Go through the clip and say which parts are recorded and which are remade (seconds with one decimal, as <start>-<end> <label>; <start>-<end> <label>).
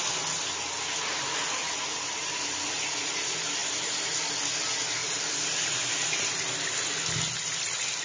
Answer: 0.0-1.9 recorded; 1.9-3.1 remade; 3.1-3.6 recorded; 3.6-4.3 remade; 4.3-5.0 recorded; 5.0-6.9 remade; 6.9-8.0 recorded